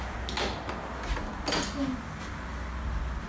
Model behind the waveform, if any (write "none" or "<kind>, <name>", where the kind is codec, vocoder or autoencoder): none